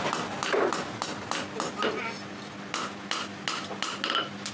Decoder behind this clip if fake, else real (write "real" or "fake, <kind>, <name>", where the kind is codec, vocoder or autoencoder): real